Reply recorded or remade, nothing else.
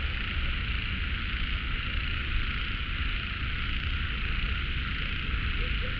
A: recorded